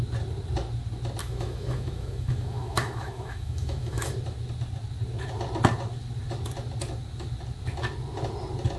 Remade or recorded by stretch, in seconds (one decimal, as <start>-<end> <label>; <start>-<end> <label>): 0.0-1.2 recorded; 1.2-4.1 remade; 4.1-8.8 recorded